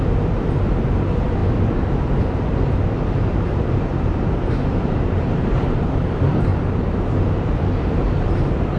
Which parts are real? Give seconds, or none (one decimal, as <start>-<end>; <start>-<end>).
1.4-2.2; 6.5-7.0